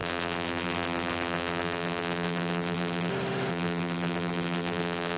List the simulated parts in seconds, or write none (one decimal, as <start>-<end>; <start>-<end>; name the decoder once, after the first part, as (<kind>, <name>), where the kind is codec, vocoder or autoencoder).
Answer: 0.0-3.1 (vocoder, BigVGAN v2); 3.5-5.2